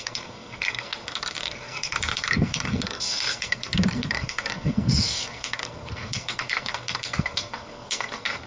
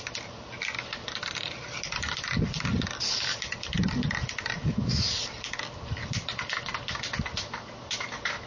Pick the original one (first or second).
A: second